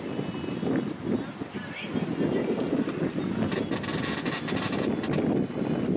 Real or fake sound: real